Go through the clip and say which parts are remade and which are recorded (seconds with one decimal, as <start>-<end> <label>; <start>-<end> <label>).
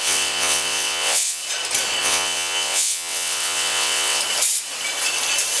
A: 0.0-1.4 remade; 1.4-2.0 recorded; 2.0-4.2 remade; 4.2-5.6 recorded